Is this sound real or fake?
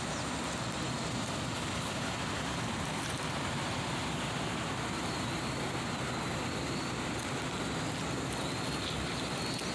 real